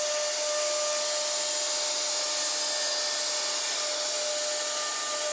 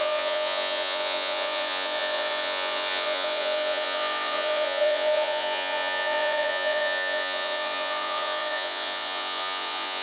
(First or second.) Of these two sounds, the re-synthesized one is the second